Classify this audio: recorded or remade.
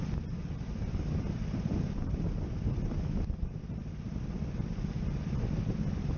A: recorded